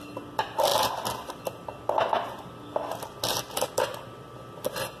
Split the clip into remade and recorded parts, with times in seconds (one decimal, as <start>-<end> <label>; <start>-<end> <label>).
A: 0.0-5.0 recorded